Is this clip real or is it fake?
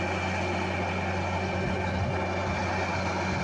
real